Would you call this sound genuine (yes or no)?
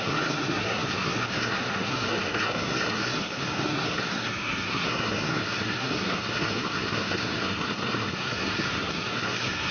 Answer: no